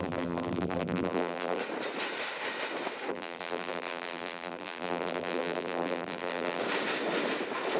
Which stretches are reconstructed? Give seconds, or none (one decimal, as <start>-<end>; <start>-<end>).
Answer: 0.0-1.6; 3.1-6.6